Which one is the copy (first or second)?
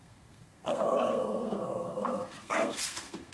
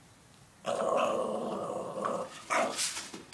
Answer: first